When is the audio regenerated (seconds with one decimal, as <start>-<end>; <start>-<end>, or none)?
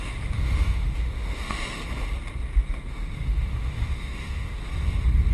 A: 0.0-1.8; 2.7-4.6